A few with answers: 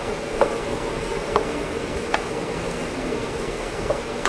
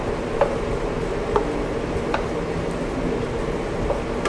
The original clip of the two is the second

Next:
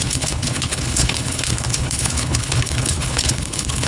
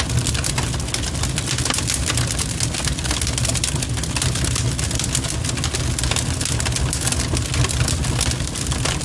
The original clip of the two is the second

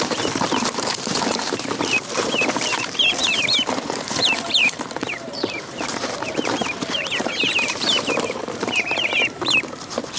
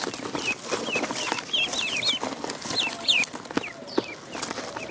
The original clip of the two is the second